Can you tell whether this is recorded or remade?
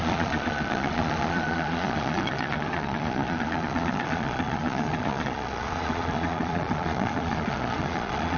remade